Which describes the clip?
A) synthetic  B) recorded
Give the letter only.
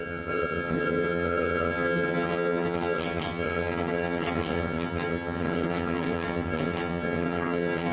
A